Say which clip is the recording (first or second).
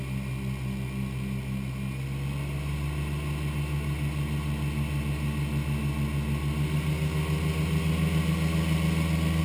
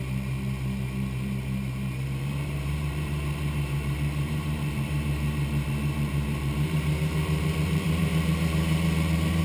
first